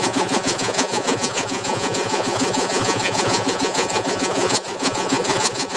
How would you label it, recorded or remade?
remade